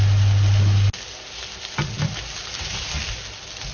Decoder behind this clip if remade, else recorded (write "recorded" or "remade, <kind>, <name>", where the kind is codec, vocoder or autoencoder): recorded